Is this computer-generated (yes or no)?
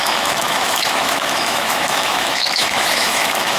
yes